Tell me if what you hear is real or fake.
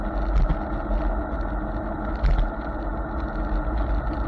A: real